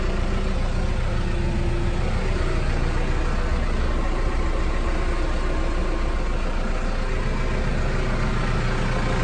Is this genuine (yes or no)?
yes